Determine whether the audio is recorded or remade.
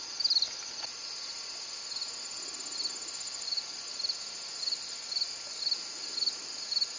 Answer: recorded